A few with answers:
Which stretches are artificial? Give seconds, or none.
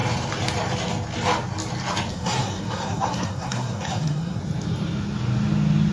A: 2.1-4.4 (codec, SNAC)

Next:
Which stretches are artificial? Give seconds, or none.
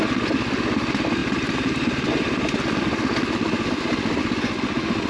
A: none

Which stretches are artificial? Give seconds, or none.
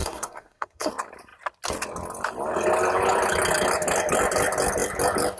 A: 0.0-0.9 (codec, SNAC)